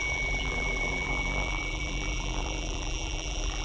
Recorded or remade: remade